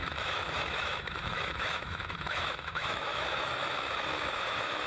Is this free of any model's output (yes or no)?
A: no